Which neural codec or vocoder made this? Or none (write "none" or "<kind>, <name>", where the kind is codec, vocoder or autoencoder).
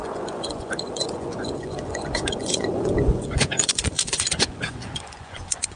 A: vocoder, Vocos